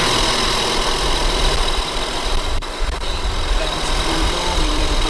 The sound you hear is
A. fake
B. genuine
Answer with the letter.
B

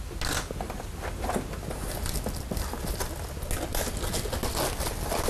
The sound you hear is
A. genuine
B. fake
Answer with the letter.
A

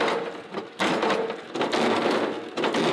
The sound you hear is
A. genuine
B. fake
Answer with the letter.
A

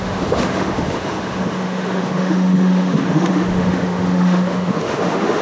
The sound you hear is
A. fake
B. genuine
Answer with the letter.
A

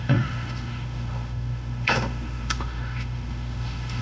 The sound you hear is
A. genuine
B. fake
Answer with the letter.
B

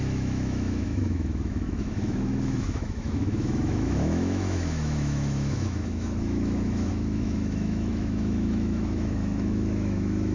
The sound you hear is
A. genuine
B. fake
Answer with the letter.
B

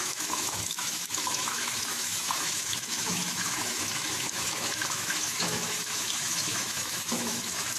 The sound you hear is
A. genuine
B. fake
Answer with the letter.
B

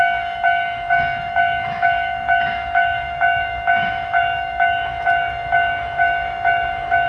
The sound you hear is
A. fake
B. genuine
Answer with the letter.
A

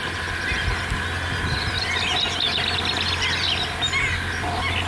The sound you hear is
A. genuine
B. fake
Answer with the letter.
A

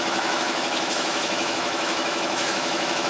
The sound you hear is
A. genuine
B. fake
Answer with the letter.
B